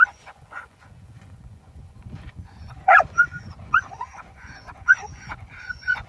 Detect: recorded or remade remade